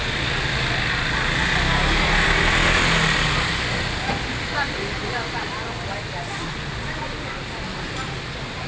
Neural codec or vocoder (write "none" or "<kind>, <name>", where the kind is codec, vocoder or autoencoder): none